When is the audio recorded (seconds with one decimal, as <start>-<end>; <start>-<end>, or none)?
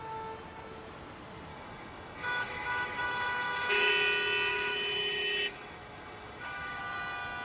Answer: 0.0-1.5; 3.9-4.5; 6.8-7.4